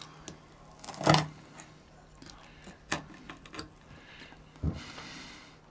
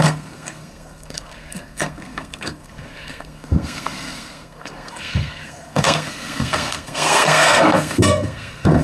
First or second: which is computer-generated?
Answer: second